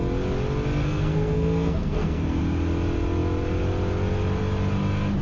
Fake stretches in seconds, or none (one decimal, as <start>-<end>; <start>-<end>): 0.8-2.4